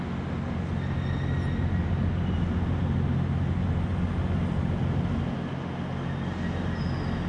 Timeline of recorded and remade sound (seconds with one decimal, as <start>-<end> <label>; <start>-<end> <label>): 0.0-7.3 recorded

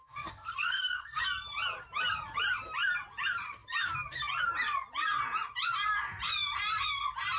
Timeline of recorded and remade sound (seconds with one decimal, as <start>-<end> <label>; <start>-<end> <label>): 0.0-1.2 remade; 1.2-7.4 recorded

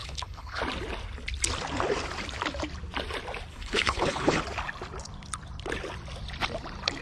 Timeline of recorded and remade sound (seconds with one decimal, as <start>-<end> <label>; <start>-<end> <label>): 0.0-0.6 remade; 0.6-3.5 recorded; 3.5-4.4 remade; 4.4-7.0 recorded

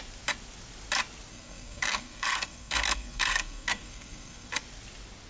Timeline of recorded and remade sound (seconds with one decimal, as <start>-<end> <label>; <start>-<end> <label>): 0.0-1.3 recorded; 1.3-4.5 remade; 4.5-5.3 recorded

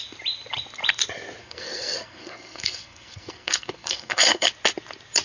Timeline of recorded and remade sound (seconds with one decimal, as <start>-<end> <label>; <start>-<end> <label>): 0.0-1.4 recorded; 1.4-4.5 remade; 4.5-5.2 recorded